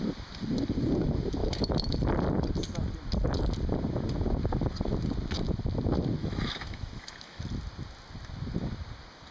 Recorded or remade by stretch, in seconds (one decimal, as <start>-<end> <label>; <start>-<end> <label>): 0.0-1.4 recorded; 1.4-1.9 remade; 1.9-6.2 recorded; 6.2-7.4 remade; 7.4-9.3 recorded